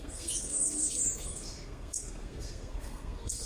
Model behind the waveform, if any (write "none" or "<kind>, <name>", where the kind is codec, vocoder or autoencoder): codec, SNAC